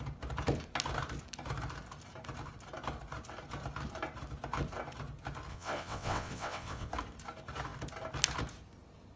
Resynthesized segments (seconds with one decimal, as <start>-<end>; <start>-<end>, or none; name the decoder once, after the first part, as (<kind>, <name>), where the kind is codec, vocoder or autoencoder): 5.5-6.9 (vocoder, WaveNeXt)